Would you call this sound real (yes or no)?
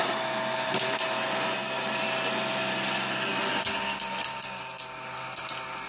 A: yes